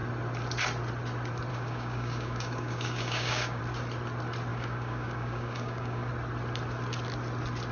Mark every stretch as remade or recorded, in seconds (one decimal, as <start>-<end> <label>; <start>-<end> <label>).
0.0-1.5 recorded; 1.5-3.6 remade; 3.6-4.5 recorded; 4.5-6.1 remade; 6.1-7.7 recorded